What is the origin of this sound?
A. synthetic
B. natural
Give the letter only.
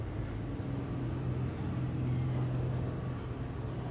B